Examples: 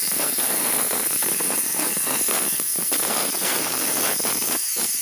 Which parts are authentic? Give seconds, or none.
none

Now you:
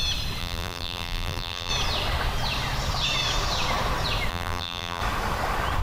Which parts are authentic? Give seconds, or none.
0.0-0.4; 1.7-4.3; 5.0-5.8

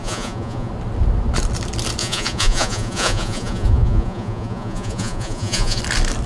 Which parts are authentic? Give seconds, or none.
0.7-2.0; 5.8-6.3